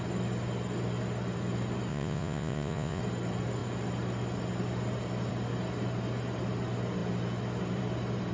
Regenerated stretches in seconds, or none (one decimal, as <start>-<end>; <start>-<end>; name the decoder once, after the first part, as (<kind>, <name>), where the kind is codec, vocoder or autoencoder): 1.9-3.0 (vocoder, Vocos)